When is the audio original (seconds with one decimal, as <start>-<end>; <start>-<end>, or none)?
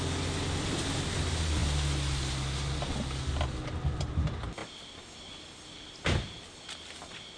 0.0-7.4